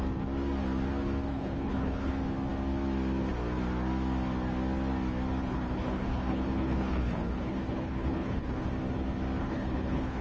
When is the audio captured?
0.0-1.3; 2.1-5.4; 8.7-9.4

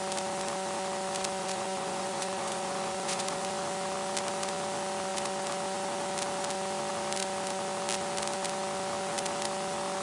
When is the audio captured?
0.0-1.4; 3.5-10.0

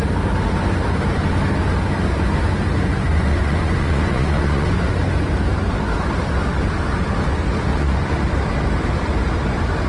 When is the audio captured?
0.0-2.9; 4.9-7.7; 8.2-9.9

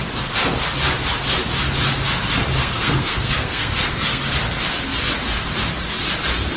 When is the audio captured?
0.0-2.6; 4.2-6.6

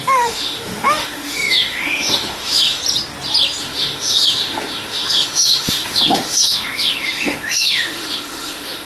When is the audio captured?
2.8-3.6

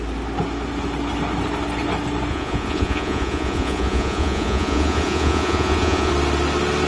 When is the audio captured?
0.0-2.3; 6.1-6.9